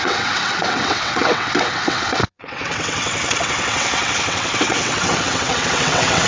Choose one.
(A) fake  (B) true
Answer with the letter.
A